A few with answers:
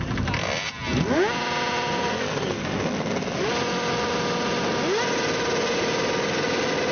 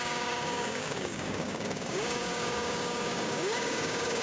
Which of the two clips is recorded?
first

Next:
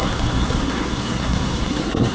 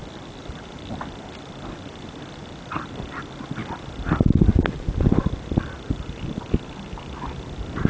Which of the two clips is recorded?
second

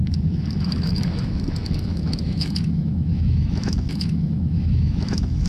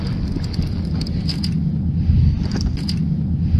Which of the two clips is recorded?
second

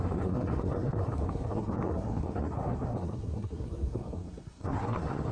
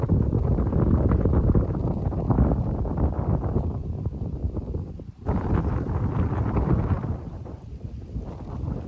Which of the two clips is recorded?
second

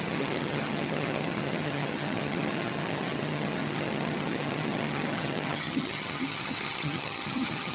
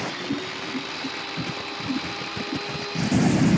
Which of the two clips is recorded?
second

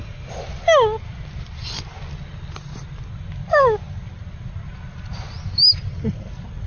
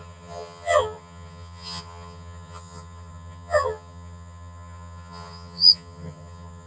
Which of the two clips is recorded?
first